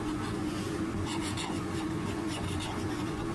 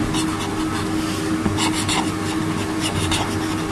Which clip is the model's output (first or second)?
first